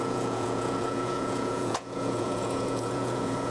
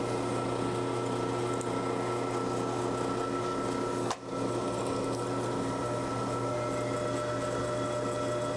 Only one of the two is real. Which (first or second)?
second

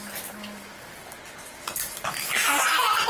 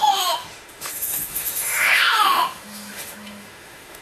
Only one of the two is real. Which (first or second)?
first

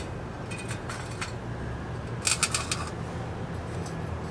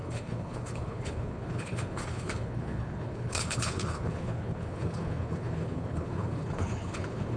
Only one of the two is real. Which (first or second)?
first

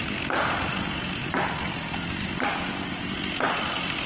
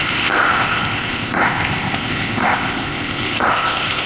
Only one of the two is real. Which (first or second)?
first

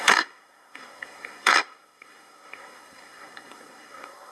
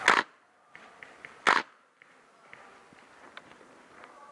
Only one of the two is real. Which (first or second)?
second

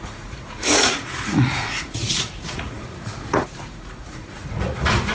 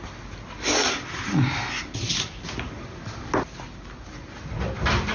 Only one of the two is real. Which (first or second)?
second